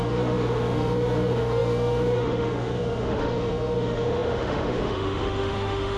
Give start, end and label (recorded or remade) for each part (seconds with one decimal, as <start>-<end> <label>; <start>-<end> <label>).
0.0-6.0 remade